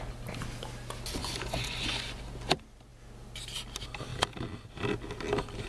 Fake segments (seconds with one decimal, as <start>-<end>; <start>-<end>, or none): 1.2-2.2